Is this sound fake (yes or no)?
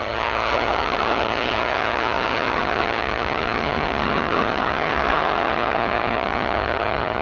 yes